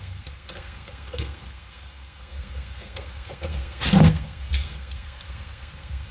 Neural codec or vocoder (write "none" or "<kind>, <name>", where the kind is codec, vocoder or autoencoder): codec, SNAC